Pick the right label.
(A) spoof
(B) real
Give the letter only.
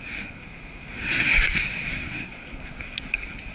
A